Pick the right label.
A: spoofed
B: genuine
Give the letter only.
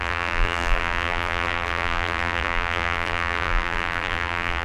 A